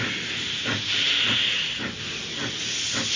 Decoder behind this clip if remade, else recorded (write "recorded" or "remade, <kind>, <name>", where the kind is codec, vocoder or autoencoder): recorded